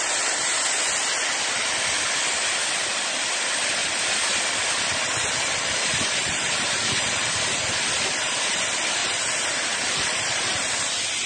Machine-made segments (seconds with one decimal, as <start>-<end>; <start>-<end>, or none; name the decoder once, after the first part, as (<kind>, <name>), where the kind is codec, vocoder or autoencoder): 6.2-6.8 (vocoder, BigVGAN v2); 9.0-10.9